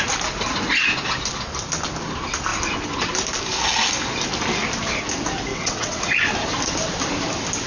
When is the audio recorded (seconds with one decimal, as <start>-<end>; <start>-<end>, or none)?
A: 0.0-5.5; 6.0-7.7